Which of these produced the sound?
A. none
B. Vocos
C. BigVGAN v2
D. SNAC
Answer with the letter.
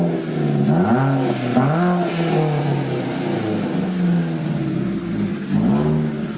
A